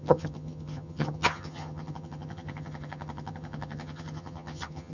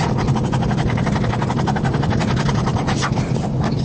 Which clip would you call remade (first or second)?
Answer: first